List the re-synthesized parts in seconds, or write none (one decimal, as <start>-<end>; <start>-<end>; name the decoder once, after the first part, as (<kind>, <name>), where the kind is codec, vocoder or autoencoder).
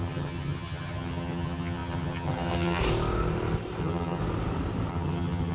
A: 0.0-2.8 (vocoder, HiFi-GAN); 3.8-4.2; 4.9-5.5